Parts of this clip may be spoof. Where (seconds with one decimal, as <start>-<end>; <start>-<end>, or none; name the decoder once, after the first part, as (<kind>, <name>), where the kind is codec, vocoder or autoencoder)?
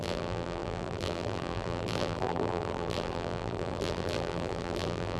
0.0-5.2 (vocoder, BigVGAN v2)